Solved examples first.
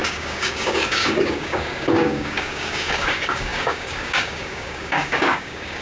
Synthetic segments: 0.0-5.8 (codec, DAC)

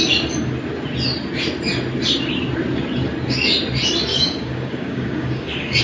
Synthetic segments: 4.1-5.8 (codec, DAC)

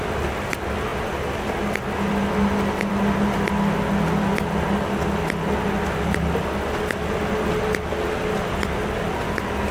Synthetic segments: none

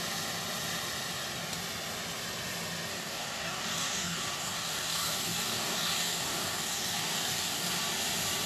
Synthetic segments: 2.9-7.8 (codec, DAC)

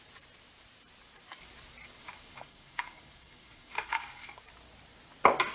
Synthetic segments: 2.0-4.4 (codec, DAC)

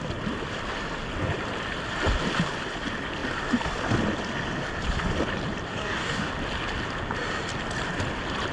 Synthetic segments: 5.7-6.3 (codec, DAC)

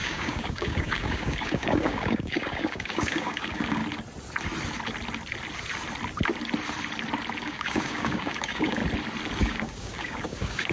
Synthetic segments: 0.0-3.8 (codec, DAC); 7.4-8.8; 9.4-10.7